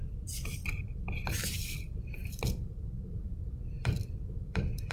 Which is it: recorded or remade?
remade